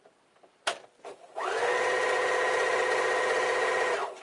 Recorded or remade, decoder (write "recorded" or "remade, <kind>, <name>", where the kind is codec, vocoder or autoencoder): recorded